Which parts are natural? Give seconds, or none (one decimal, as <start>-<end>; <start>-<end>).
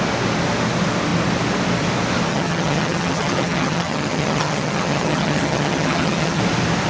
0.0-2.3; 6.4-6.9